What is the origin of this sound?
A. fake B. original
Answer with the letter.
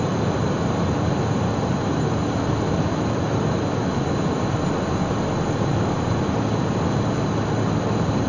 B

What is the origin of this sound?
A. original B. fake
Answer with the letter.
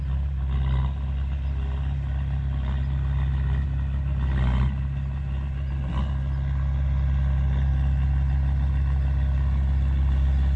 A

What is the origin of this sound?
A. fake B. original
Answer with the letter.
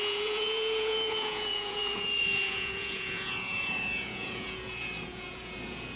A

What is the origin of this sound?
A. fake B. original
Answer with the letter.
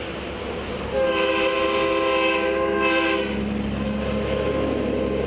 B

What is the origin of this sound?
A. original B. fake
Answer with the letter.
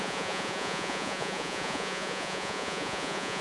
B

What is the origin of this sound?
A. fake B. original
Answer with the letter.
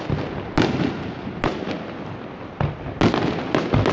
B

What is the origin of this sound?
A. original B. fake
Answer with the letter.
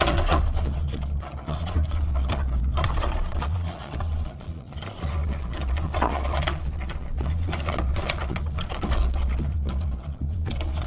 B